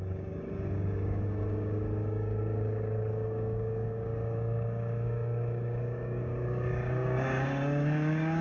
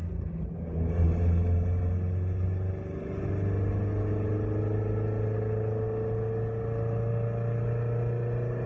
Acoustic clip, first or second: second